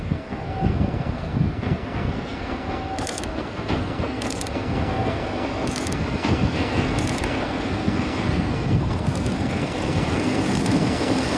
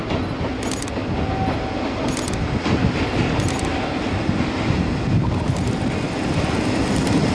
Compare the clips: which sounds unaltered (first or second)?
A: second